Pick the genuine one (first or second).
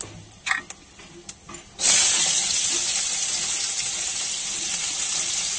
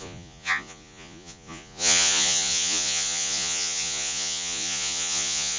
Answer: first